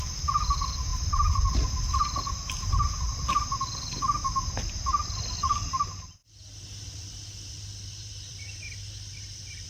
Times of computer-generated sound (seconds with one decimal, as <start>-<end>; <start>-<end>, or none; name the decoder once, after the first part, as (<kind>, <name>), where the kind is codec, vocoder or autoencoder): 0.9-3.6 (vocoder, BigVGAN v2); 6.2-9.7